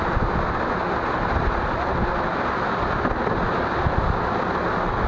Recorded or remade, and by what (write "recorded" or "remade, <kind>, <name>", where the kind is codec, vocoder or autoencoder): recorded